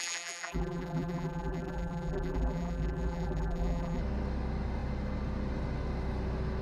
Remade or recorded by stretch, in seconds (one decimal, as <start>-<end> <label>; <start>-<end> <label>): 0.0-4.0 remade; 4.0-6.6 recorded